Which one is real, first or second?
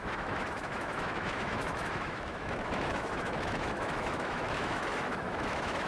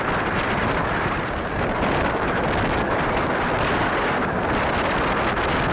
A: second